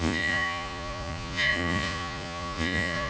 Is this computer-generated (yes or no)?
yes